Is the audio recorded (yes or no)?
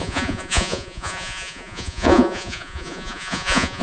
no